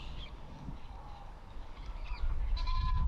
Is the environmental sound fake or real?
fake